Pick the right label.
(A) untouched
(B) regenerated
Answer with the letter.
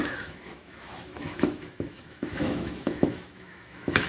B